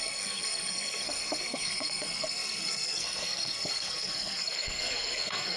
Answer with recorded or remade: remade